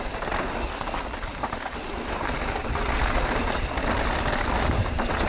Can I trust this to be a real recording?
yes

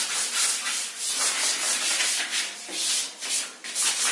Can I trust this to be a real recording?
yes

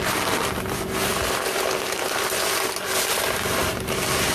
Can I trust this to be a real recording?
yes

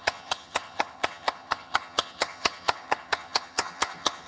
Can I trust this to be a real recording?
no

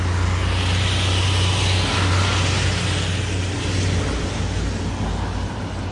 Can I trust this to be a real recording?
yes